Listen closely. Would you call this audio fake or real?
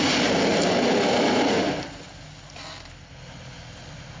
real